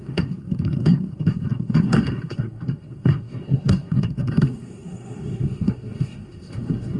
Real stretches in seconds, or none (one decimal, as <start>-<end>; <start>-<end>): none